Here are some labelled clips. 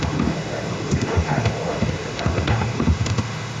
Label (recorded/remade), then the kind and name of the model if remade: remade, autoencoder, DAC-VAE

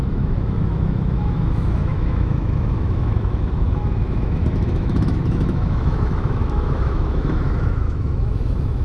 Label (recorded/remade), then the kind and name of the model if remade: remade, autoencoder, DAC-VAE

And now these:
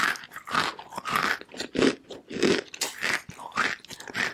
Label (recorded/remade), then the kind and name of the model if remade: recorded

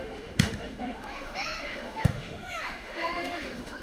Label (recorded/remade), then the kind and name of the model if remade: remade, autoencoder, DAC-VAE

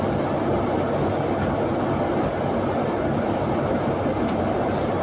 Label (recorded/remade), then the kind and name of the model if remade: recorded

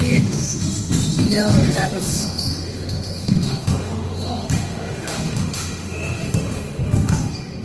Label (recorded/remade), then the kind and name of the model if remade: remade, autoencoder, DAC-VAE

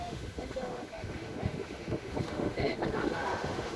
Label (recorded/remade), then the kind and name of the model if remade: remade, autoencoder, DAC-VAE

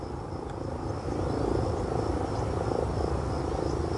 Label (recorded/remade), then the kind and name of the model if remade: recorded